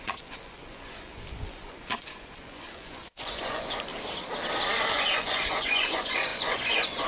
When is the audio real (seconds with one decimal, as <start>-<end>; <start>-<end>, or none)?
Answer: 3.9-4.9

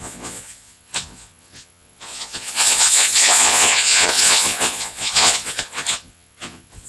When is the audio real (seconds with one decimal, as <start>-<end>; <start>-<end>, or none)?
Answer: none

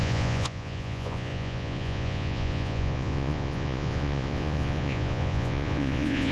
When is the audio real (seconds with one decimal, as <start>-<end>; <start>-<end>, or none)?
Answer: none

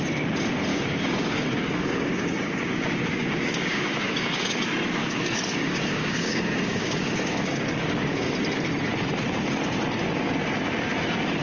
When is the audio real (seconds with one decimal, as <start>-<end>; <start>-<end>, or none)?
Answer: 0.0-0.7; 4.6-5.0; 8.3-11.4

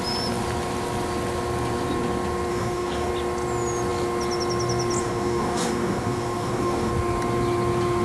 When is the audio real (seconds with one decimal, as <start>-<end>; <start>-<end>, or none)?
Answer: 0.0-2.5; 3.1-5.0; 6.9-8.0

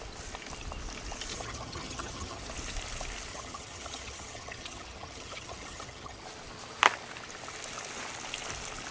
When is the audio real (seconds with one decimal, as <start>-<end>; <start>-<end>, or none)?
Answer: 0.0-1.3; 2.4-3.3; 6.2-8.9